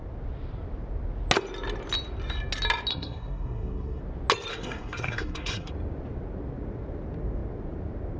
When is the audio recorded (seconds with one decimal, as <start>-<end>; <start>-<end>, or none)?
0.0-2.9; 4.0-4.5; 5.7-8.2